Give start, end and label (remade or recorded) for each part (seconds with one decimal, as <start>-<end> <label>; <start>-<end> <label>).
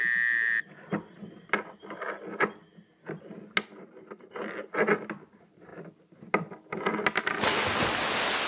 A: 0.0-8.5 recorded